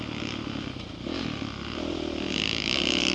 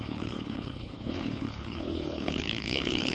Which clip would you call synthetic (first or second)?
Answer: second